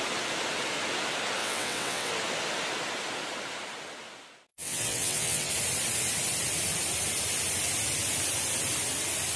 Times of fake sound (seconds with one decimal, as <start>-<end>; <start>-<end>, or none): 1.4-2.1; 4.5-5.5